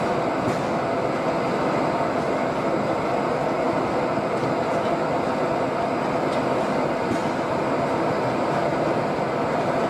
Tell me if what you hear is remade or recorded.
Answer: recorded